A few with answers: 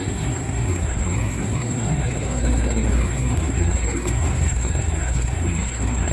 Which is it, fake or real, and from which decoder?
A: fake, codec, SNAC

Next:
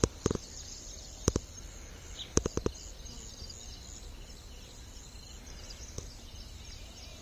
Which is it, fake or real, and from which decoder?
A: real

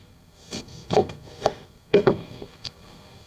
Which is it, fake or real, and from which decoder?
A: fake, codec, SNAC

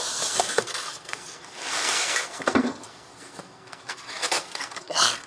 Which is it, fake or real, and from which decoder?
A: fake, codec, SNAC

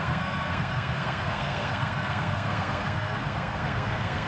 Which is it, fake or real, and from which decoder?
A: fake, codec, SNAC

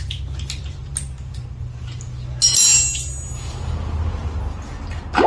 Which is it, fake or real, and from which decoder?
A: real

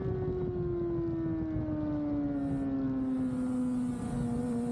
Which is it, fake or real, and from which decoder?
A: real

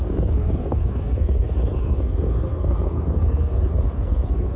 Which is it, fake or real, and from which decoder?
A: fake, codec, SNAC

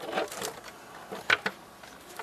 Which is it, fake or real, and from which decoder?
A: real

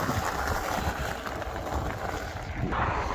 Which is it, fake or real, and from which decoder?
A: real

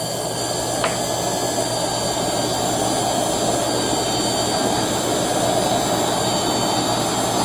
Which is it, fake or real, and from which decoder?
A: real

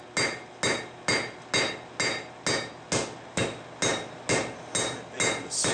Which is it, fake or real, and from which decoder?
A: real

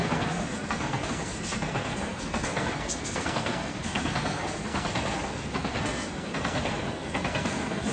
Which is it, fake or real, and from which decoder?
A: fake, codec, SNAC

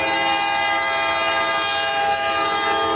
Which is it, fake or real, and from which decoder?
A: real